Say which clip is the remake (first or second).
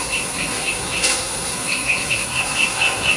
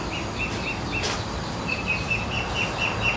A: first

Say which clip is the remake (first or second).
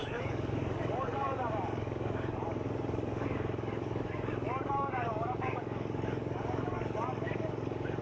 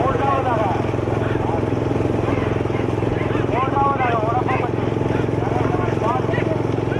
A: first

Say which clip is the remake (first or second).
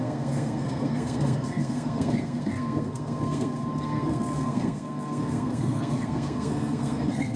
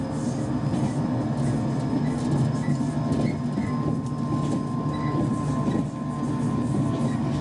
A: first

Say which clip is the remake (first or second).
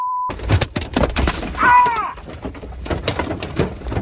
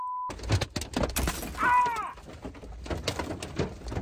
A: first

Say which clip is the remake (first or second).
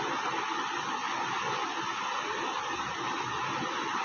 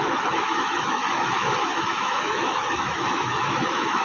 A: second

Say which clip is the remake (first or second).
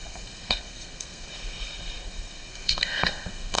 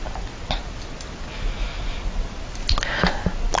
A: first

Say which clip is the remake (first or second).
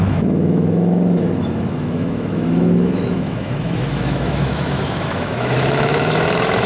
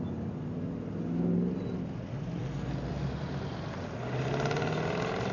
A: first